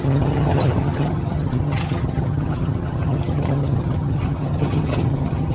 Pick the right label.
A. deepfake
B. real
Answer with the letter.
A